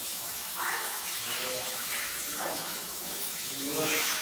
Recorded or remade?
remade